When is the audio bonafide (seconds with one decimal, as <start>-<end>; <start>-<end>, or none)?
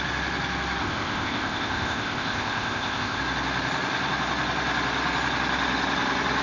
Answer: 0.0-0.8; 3.2-6.4